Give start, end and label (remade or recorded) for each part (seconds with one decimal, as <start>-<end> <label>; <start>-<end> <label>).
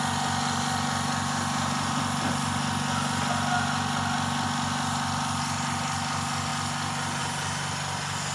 0.0-8.3 recorded